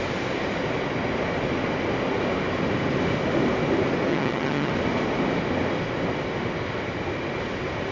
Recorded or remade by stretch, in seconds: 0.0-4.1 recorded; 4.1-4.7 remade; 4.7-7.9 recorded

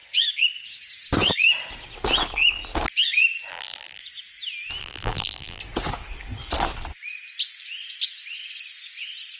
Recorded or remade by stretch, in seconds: 0.0-3.5 recorded; 3.5-4.0 remade; 4.0-4.8 recorded; 4.8-5.6 remade; 5.6-9.4 recorded

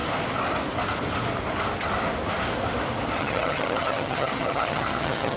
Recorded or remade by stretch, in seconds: 0.0-3.2 recorded; 3.2-5.4 remade

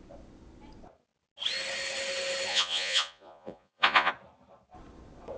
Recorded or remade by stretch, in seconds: 0.0-2.5 recorded; 2.5-4.1 remade; 4.1-5.4 recorded

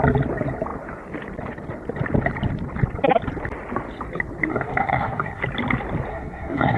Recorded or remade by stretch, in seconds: 0.0-4.5 recorded; 4.5-5.4 remade; 5.4-6.1 recorded; 6.1-6.8 remade